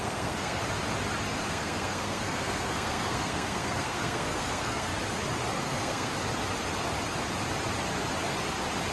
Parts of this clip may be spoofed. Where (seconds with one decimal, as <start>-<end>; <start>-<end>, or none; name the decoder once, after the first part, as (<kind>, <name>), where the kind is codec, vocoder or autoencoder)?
0.0-0.6 (codec, SNAC); 1.5-4.9; 5.6-6.1